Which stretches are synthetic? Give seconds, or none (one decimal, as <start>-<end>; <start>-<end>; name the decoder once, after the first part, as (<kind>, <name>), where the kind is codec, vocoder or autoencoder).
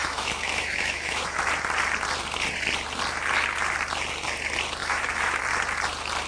0.0-1.4 (autoencoder, DAC-VAE); 4.8-5.4